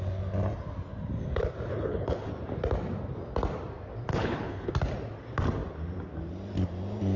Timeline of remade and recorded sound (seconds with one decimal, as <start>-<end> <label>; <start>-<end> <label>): 0.0-1.7 recorded; 1.7-2.3 remade; 2.3-4.1 recorded; 4.1-4.7 remade; 4.7-7.2 recorded